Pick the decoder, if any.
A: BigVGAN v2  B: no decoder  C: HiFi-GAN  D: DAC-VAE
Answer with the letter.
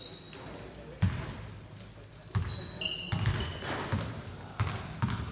B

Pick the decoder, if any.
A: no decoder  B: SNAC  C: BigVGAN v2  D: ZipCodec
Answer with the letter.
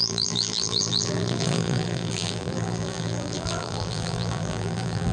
C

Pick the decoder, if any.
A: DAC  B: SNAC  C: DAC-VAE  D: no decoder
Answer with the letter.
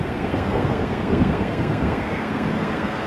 B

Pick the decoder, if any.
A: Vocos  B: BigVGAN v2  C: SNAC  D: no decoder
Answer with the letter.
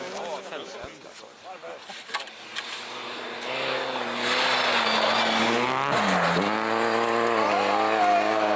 D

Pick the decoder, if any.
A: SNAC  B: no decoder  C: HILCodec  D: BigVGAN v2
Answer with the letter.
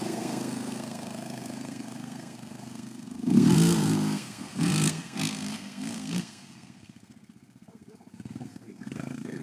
A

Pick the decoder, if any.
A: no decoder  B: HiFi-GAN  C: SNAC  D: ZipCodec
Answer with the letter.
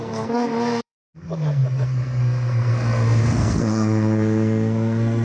C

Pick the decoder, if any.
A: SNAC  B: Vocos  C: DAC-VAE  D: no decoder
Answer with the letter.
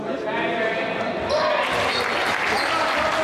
D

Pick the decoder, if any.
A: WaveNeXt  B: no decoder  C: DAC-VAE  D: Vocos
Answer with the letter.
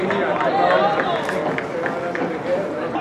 B